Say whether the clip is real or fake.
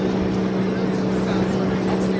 real